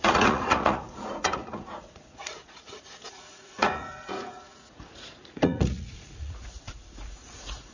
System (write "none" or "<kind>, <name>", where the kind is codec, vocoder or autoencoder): vocoder, Vocos